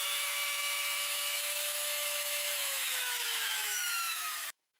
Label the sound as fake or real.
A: fake